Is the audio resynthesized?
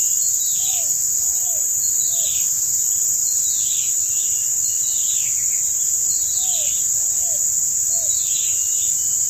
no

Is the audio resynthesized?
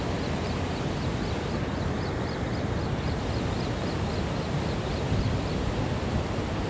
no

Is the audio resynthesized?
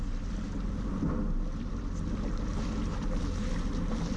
no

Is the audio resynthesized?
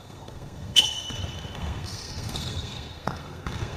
yes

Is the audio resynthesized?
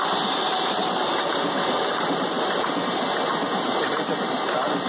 no